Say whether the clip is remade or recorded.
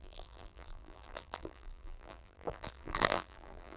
remade